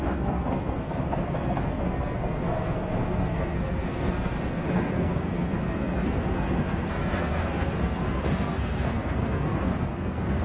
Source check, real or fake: fake